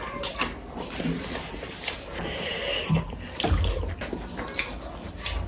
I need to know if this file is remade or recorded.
recorded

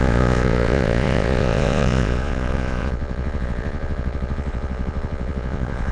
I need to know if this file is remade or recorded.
remade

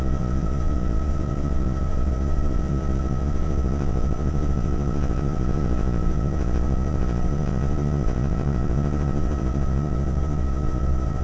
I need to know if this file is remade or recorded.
remade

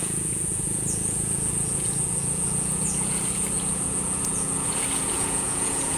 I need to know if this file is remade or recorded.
remade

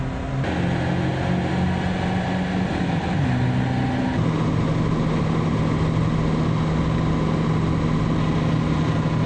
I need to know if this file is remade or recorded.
recorded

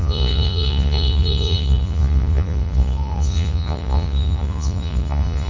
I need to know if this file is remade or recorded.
remade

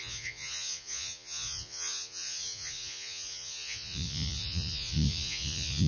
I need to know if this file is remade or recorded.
remade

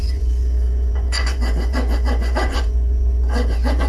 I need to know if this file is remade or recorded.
remade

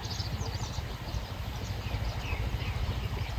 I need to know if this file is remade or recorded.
recorded